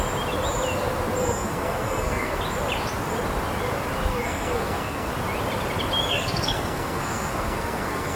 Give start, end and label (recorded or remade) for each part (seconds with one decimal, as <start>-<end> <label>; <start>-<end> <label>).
0.0-1.2 recorded; 1.2-2.4 remade; 2.4-4.1 recorded; 4.1-5.1 remade; 5.1-6.1 recorded; 6.1-8.2 remade